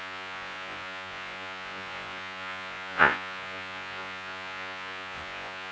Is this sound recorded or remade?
remade